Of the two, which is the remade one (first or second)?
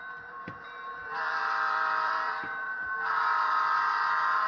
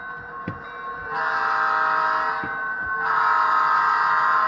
first